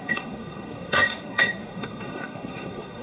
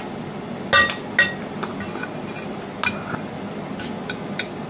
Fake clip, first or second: first